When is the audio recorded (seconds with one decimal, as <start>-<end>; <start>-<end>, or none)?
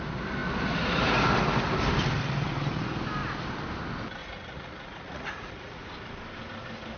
0.0-4.2; 5.8-7.0